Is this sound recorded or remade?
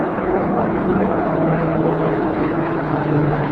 remade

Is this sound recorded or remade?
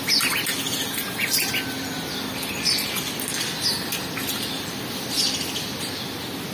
recorded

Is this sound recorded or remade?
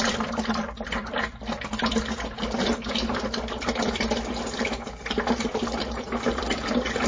remade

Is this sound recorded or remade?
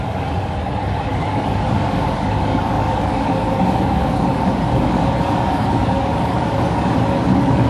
remade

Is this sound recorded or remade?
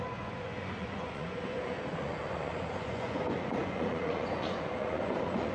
remade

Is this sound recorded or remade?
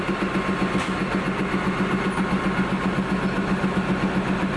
recorded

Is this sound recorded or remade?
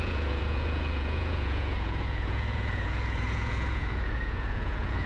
remade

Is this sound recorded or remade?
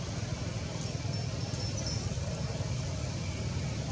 recorded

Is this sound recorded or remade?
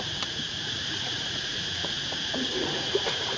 remade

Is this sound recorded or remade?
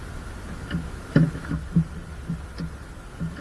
recorded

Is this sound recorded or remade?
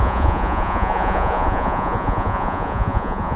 remade